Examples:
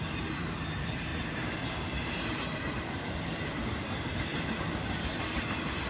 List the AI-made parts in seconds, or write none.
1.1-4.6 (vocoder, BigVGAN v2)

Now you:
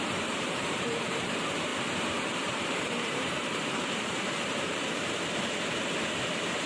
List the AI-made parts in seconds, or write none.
0.0-1.7 (vocoder, BigVGAN v2); 2.3-6.7

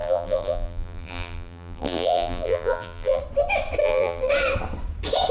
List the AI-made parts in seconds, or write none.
0.0-3.2 (vocoder, BigVGAN v2); 3.8-4.3

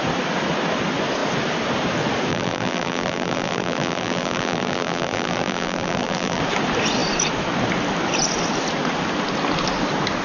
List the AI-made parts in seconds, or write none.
2.3-6.4 (vocoder, BigVGAN v2)